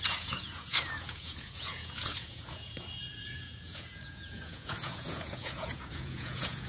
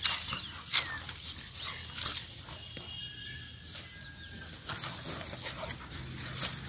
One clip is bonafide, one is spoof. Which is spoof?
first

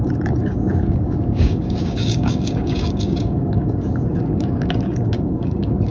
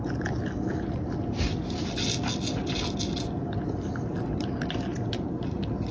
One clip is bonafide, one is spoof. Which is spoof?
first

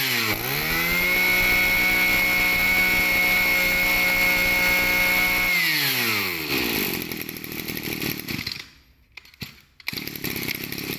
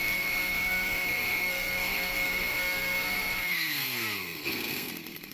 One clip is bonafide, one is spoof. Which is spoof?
second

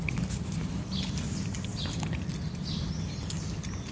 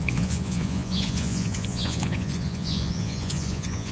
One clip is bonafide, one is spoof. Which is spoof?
second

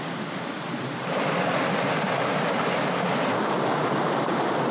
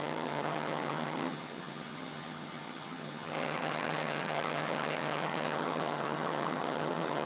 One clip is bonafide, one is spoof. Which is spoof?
second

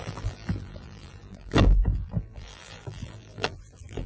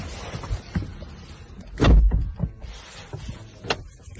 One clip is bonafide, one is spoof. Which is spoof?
first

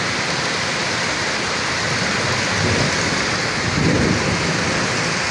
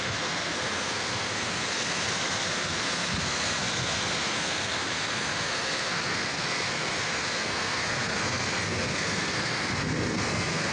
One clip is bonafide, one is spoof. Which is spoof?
second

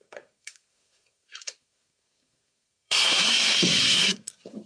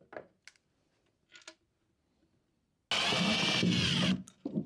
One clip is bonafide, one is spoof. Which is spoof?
first